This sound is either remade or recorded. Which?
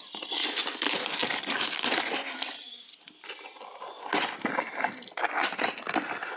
recorded